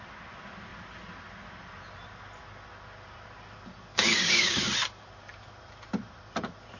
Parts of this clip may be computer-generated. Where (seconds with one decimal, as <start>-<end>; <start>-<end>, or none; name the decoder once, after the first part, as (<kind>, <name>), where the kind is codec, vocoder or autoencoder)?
3.9-4.7 (codec, DAC)